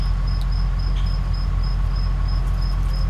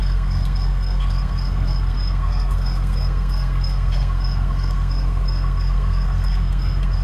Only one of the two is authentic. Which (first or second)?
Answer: first